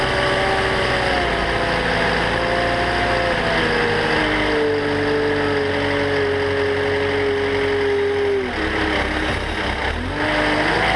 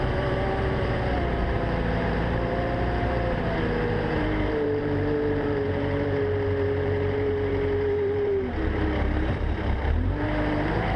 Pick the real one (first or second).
first